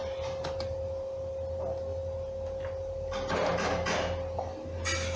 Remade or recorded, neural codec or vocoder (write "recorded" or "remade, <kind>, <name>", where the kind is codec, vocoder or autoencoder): recorded